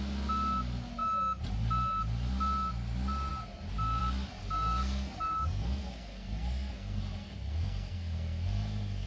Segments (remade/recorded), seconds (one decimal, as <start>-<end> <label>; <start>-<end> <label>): 0.0-4.4 recorded; 4.4-9.1 remade